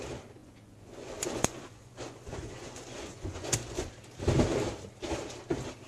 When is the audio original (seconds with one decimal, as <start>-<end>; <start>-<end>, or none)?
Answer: 0.0-0.4; 3.9-5.9